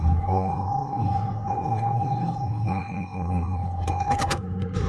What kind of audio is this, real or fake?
fake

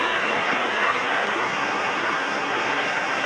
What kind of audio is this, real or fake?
fake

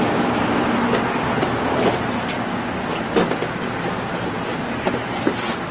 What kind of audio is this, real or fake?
real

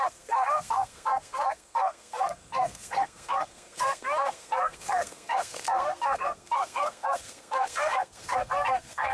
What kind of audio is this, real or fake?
fake